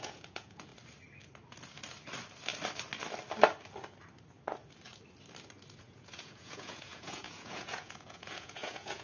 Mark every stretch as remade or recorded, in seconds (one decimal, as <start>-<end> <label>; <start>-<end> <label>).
0.0-0.7 remade; 0.7-5.8 recorded; 5.8-9.0 remade